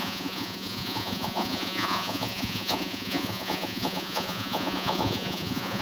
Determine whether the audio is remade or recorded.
remade